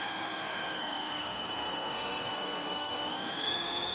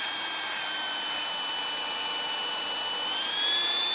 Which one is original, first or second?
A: second